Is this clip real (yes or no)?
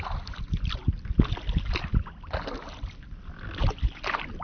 yes